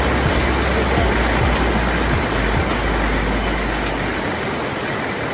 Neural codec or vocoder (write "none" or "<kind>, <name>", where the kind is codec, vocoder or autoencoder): none